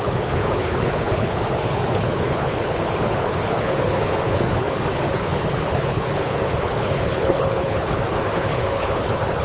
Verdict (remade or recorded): remade